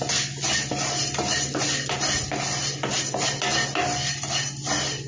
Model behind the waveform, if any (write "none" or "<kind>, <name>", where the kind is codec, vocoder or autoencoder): none